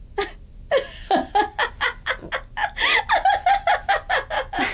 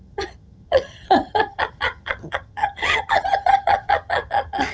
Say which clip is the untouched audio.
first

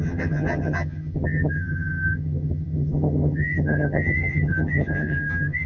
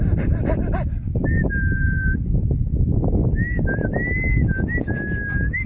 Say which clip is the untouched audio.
second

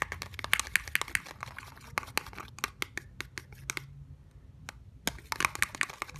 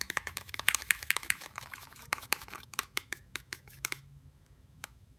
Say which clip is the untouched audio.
first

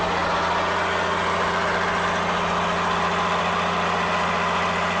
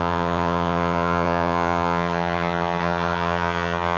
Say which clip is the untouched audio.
first